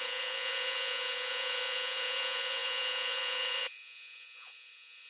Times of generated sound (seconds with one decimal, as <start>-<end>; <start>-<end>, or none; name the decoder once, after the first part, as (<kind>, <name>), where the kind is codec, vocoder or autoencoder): 0.0-5.1 (vocoder, Vocos)